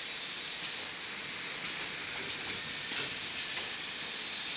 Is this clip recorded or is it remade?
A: recorded